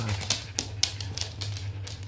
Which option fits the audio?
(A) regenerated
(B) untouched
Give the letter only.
B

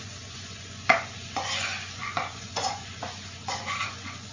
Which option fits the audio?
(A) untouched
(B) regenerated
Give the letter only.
B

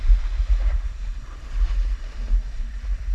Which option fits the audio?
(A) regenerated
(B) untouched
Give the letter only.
A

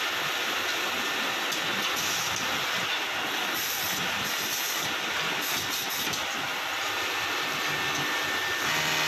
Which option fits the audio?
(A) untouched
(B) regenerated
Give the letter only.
A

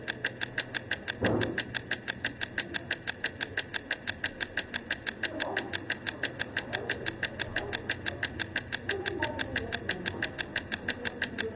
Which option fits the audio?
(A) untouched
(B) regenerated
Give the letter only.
A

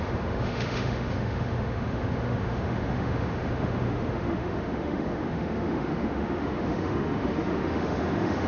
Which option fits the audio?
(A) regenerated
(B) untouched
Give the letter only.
A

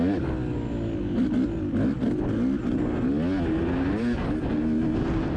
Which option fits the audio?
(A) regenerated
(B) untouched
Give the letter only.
B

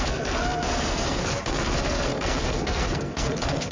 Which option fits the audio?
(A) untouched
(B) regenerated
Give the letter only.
B